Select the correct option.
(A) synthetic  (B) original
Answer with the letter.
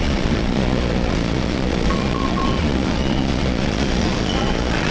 A